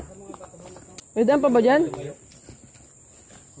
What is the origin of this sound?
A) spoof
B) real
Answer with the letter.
B